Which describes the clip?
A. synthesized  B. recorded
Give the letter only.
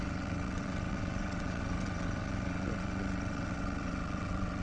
A